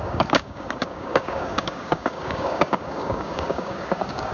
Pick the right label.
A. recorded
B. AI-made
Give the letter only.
B